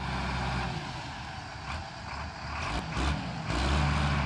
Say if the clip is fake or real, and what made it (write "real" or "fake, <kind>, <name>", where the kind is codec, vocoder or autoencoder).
real